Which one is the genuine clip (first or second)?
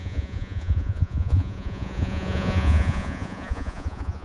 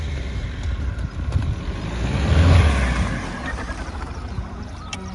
second